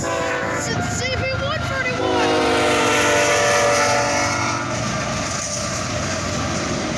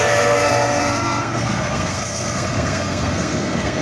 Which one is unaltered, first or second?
first